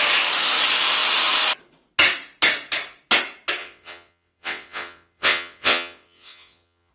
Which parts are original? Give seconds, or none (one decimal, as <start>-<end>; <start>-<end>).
0.0-3.6